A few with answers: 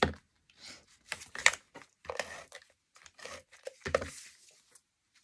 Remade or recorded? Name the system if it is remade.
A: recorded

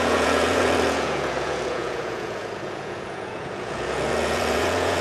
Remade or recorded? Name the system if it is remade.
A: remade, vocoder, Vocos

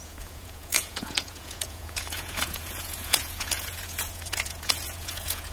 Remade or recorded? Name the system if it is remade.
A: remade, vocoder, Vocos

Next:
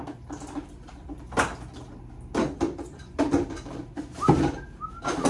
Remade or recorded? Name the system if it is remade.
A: recorded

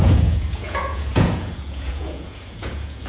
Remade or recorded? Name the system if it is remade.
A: remade, vocoder, Vocos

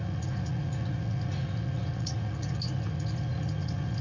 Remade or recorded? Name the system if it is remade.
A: remade, vocoder, Vocos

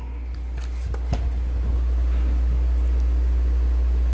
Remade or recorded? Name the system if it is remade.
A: recorded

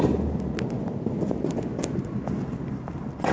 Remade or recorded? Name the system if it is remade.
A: recorded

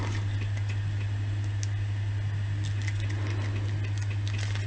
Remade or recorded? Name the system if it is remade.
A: recorded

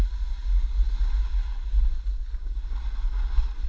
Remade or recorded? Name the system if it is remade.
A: recorded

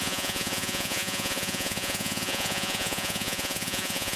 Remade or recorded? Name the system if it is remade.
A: remade, vocoder, Vocos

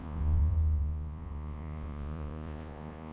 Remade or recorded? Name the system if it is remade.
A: remade, vocoder, Vocos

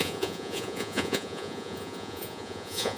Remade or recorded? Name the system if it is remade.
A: remade, vocoder, Vocos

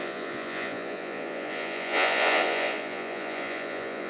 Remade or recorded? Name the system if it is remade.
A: remade, vocoder, Vocos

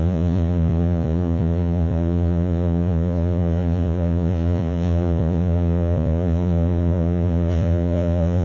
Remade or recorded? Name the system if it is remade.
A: remade, vocoder, Vocos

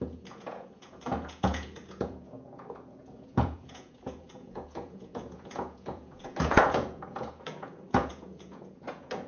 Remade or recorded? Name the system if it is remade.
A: remade, vocoder, Vocos